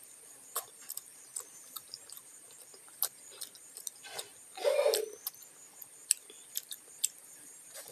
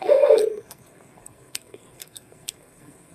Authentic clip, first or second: first